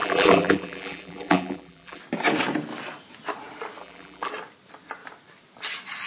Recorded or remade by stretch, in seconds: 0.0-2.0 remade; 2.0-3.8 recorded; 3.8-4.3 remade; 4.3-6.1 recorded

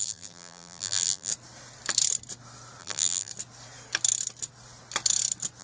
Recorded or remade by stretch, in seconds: 0.0-1.3 remade; 1.3-2.8 recorded; 2.8-3.3 remade; 3.3-5.6 recorded

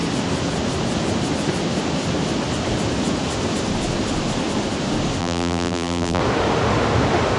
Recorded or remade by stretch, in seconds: 0.0-5.2 recorded; 5.2-6.2 remade; 6.2-7.4 recorded

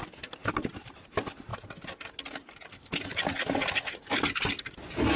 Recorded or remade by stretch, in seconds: 0.0-0.4 recorded; 0.4-1.1 remade; 1.1-5.2 recorded

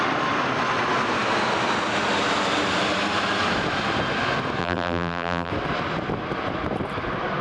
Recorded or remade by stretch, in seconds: 0.0-4.6 recorded; 4.6-5.5 remade; 5.5-7.4 recorded

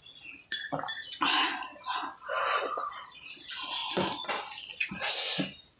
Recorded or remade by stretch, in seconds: 0.0-0.4 recorded; 0.4-2.8 remade; 2.8-3.8 recorded; 3.8-4.9 remade; 4.9-5.8 recorded